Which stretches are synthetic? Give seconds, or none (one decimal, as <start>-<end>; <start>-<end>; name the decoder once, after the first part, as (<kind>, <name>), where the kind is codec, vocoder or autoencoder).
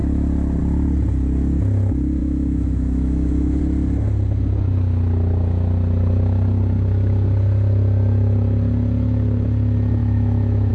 2.2-3.6 (autoencoder, DAC-VAE); 10.0-10.7